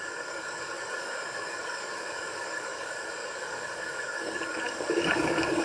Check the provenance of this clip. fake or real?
fake